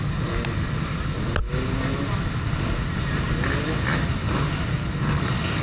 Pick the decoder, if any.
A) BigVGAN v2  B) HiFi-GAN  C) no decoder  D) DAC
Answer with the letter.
C